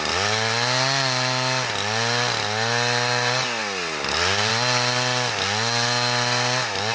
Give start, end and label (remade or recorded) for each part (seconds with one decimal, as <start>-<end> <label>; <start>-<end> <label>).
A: 0.0-6.9 recorded